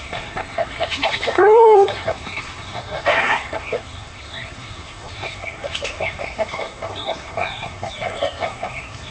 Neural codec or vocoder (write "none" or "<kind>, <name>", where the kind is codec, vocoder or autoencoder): codec, SNAC